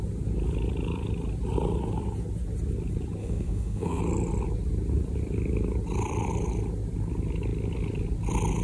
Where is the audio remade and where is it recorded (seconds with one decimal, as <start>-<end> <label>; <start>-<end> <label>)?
0.0-3.2 recorded; 3.2-4.0 remade; 4.0-8.6 recorded